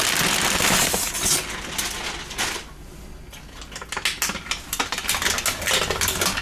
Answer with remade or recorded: recorded